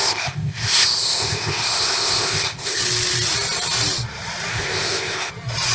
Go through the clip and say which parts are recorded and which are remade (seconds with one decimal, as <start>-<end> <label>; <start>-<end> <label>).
0.0-2.8 remade; 2.8-4.5 recorded; 4.5-5.3 remade; 5.3-5.7 recorded